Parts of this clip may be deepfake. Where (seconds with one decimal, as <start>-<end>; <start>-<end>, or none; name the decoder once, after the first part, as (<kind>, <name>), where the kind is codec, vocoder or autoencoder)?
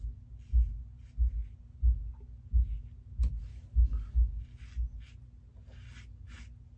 none